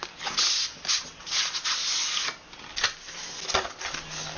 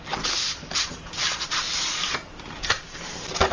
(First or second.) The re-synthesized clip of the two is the second